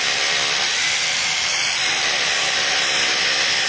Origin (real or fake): fake